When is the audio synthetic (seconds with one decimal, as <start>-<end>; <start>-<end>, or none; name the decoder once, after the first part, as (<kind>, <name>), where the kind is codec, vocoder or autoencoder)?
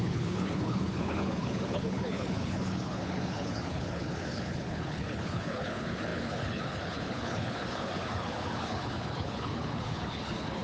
0.0-10.6 (codec, HILCodec)